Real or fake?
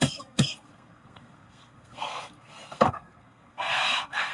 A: fake